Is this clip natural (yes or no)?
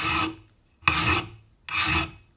yes